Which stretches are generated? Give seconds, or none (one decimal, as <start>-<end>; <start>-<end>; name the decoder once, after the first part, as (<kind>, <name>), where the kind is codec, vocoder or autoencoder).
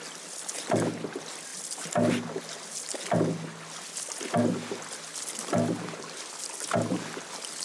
none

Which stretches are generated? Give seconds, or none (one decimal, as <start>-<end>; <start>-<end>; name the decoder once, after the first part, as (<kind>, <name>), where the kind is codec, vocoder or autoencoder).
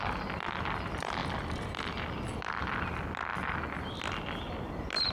none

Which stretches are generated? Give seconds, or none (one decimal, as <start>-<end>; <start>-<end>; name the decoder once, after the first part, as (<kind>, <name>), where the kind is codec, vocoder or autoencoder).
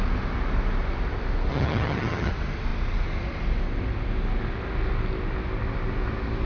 1.5-2.3 (vocoder, HiFi-GAN)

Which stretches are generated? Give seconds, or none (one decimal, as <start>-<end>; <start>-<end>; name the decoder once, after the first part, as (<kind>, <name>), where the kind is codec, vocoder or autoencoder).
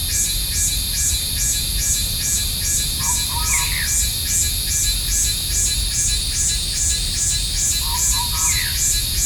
none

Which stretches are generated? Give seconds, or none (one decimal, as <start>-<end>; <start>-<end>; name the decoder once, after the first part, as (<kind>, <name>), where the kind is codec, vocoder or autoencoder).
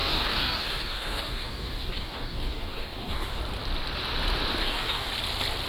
0.0-3.4 (codec, DAC); 4.6-5.1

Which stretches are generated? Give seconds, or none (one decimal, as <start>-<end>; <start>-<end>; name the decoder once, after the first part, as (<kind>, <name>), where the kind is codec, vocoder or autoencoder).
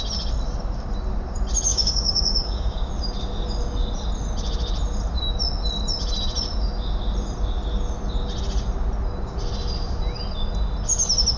1.7-2.9 (codec, DAC)